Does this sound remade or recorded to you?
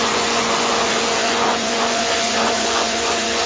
remade